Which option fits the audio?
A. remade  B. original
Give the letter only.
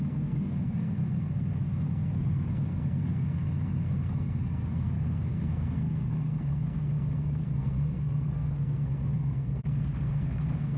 A